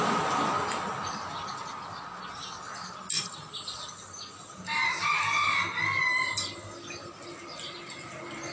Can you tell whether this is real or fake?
real